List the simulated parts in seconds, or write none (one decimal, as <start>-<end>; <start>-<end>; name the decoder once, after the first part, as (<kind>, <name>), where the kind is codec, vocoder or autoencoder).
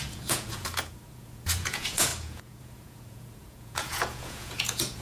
0.0-5.0 (vocoder, Vocos)